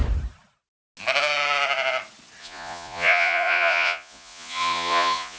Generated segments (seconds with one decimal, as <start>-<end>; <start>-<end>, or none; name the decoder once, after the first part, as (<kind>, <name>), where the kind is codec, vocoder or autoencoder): 2.4-5.4 (vocoder, Vocos)